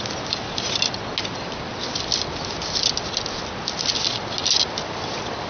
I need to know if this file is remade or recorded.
recorded